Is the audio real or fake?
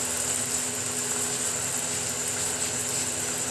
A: real